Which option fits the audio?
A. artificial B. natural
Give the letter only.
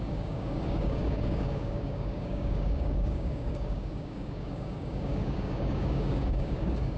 A